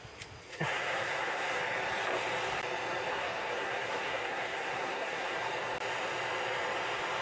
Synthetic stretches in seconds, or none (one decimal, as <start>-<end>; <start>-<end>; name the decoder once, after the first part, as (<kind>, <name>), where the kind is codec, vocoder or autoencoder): 0.5-1.6 (codec, SNAC); 3.1-5.5